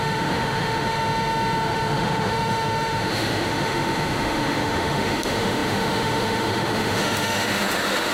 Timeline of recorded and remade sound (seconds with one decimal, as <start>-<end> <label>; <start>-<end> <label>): 0.0-8.1 remade